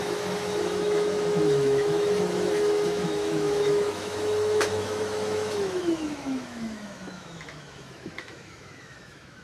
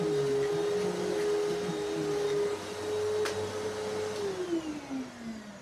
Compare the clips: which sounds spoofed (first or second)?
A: first